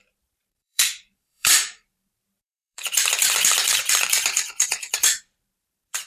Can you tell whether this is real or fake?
fake